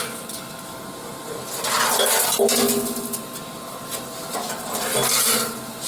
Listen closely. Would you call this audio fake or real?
real